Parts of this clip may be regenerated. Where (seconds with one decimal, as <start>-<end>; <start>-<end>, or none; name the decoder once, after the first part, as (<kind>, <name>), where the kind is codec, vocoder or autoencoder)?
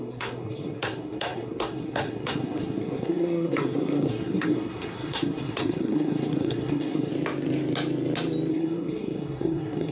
0.0-7.1 (codec, SNAC); 8.5-9.9